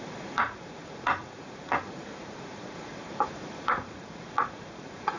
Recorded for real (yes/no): no